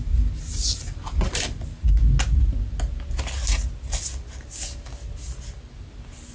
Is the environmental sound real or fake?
real